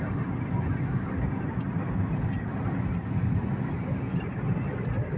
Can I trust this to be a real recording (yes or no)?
yes